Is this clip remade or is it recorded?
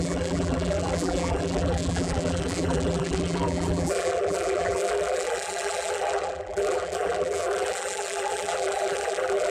remade